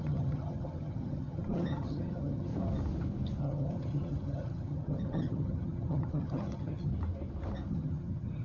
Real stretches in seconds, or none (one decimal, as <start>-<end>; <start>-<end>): 2.5-3.4; 6.9-7.7